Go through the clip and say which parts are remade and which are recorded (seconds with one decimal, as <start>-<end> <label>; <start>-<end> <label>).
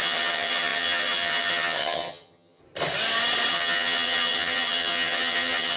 0.0-2.6 remade; 2.6-3.5 recorded; 3.5-5.8 remade